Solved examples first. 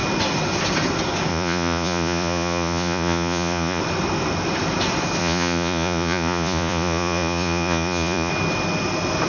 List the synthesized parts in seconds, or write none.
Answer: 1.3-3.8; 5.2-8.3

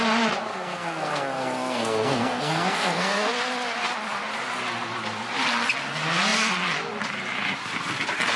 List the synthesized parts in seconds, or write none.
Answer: 0.5-3.3

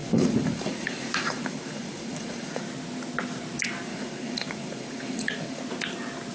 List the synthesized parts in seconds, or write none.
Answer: 0.0-2.6; 3.9-5.6

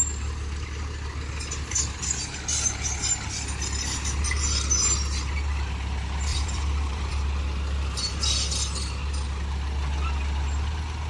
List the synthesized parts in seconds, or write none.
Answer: 6.3-7.2

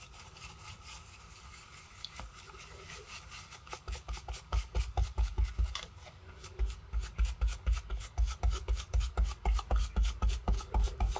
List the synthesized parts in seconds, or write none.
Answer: 0.0-11.2

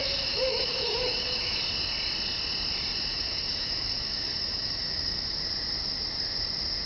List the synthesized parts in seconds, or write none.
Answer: 0.0-1.6; 3.1-5.4

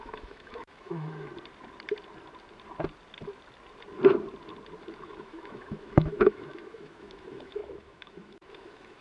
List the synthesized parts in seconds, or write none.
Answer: 0.0-1.3; 5.0-9.0